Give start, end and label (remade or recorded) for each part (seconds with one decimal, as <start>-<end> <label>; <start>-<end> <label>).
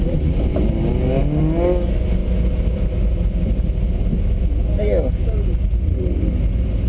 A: 0.0-6.9 recorded